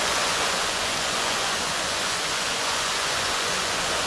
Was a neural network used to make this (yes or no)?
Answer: yes